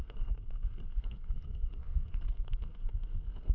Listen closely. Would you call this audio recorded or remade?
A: remade